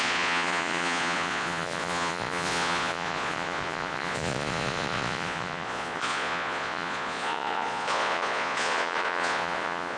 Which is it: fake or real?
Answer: fake